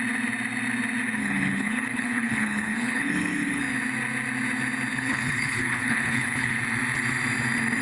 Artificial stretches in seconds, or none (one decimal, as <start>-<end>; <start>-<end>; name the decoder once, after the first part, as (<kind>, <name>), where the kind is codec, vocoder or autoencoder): 1.2-3.6 (codec, HILCodec); 4.9-6.6